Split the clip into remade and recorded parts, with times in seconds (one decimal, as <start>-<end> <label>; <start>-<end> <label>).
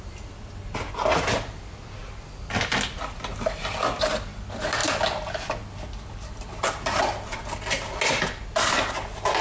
0.0-9.4 recorded